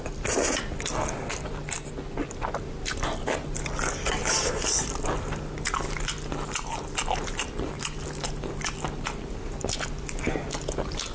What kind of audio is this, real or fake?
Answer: real